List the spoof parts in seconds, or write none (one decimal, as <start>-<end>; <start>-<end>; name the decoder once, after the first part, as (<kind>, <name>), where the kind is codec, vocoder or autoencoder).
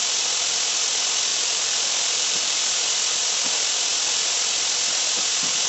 1.3-2.7 (vocoder, BigVGAN v2)